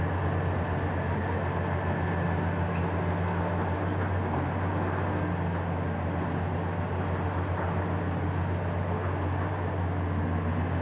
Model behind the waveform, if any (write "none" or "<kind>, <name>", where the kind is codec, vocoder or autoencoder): none